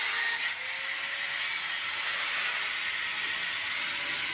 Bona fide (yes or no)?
yes